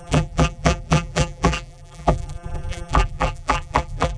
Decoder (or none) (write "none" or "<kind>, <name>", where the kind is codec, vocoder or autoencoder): vocoder, BigVGAN v2